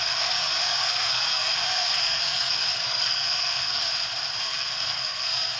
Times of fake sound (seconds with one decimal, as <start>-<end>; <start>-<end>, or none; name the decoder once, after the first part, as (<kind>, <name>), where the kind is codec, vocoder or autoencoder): 0.0-3.9 (codec, SNAC); 4.4-5.6